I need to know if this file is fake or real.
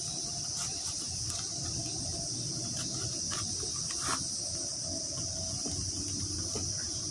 real